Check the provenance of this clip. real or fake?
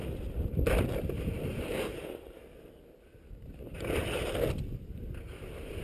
fake